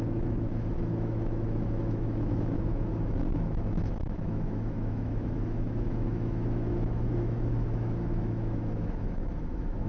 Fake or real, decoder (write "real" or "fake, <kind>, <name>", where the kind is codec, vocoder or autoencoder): fake, autoencoder, DAC-VAE